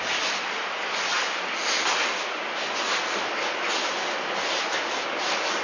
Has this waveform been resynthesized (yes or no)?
no